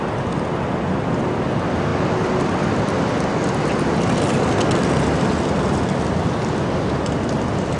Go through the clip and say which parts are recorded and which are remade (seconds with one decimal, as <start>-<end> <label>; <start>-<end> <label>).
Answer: 0.0-7.8 recorded